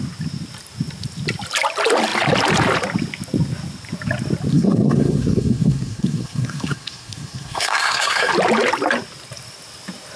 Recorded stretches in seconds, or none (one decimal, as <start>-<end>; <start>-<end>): 0.0-4.5; 8.3-10.2